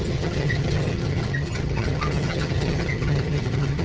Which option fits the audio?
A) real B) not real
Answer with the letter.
B